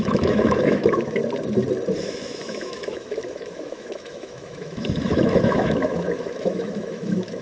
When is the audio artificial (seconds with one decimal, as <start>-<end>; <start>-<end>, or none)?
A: 0.0-1.2; 2.0-7.4